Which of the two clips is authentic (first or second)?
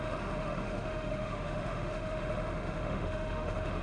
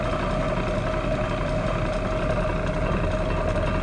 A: second